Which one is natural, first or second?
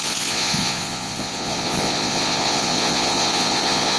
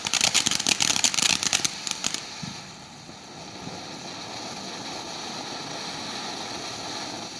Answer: second